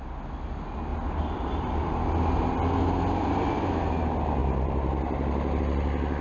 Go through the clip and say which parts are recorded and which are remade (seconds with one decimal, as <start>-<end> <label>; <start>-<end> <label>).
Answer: 0.0-0.9 recorded; 0.9-2.0 remade; 2.0-4.4 recorded; 4.4-5.6 remade; 5.6-6.2 recorded

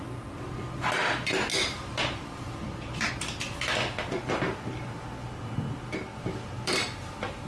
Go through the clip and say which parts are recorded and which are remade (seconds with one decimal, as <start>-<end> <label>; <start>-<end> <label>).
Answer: 0.0-1.5 recorded; 1.5-3.1 remade; 3.1-6.1 recorded; 6.1-6.8 remade; 6.8-7.5 recorded

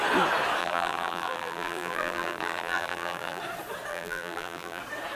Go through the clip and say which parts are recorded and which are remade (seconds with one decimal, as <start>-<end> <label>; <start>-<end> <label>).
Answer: 0.0-0.6 recorded; 0.6-3.4 remade; 3.4-3.9 recorded; 3.9-4.8 remade; 4.8-5.2 recorded

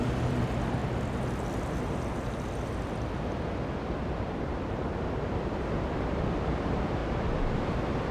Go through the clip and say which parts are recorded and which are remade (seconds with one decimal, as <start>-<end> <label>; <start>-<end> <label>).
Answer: 0.0-0.8 remade; 0.8-4.2 recorded; 4.2-7.0 remade; 7.0-8.1 recorded

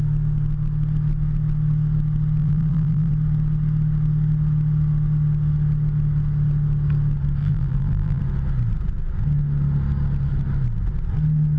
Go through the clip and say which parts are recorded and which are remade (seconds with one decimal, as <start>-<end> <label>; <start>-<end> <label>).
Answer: 0.0-2.4 recorded; 2.4-3.1 remade; 3.1-7.4 recorded; 7.4-8.2 remade; 8.2-11.6 recorded

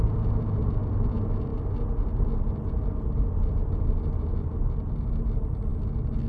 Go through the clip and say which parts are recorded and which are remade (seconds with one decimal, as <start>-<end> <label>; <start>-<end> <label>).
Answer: 0.0-6.3 recorded

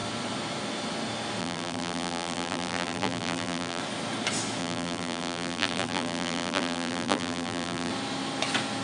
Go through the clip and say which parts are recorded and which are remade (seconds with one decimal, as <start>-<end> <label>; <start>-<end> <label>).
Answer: 0.0-1.4 recorded; 1.4-3.8 remade; 3.8-4.6 recorded; 4.6-7.9 remade; 7.9-8.8 recorded